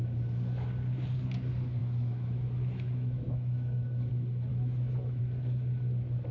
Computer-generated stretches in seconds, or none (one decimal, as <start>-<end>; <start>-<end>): 1.8-4.1; 4.5-5.2